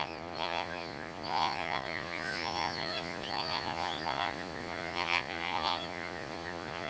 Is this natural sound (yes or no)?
no